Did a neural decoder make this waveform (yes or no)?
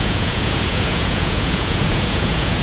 yes